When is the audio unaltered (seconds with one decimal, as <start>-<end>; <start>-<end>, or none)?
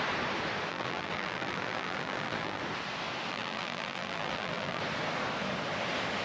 0.0-0.7; 2.6-3.3; 4.8-6.2